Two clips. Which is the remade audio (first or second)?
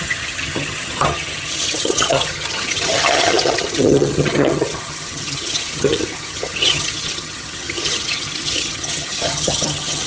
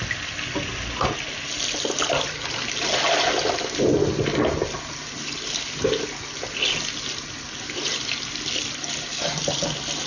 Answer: first